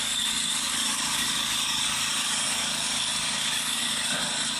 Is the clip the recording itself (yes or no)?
no